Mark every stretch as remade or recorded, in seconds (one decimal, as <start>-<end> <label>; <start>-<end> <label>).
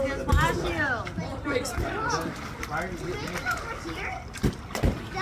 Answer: 0.0-5.2 recorded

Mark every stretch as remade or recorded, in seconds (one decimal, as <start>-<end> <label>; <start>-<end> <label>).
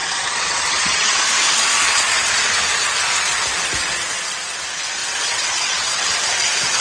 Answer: 0.0-1.2 remade; 1.2-5.0 recorded; 5.0-6.0 remade; 6.0-6.8 recorded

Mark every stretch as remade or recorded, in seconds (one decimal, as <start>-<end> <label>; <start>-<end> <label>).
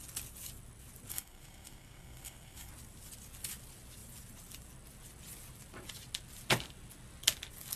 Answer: 0.0-1.1 recorded; 1.1-2.7 remade; 2.7-7.8 recorded